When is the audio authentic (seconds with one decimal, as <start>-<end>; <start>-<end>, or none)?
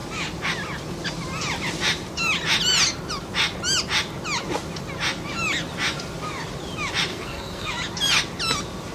0.0-7.1; 7.7-8.9